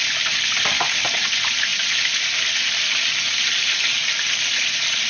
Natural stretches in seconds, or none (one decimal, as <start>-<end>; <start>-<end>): 0.0-5.1